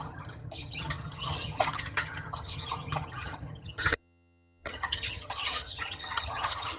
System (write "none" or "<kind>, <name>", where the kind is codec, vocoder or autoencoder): vocoder, HiFi-GAN